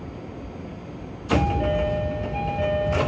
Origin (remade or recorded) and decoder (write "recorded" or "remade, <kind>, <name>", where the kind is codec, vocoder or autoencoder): recorded